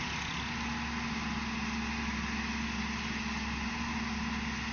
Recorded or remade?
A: recorded